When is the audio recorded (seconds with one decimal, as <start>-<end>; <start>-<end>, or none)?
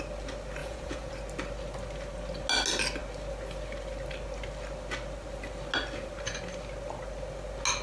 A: 0.0-0.6; 1.1-7.8